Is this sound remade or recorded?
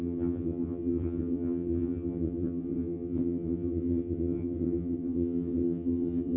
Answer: remade